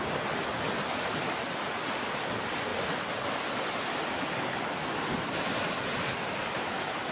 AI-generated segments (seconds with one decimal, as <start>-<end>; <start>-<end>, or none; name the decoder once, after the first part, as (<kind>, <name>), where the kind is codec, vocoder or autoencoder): none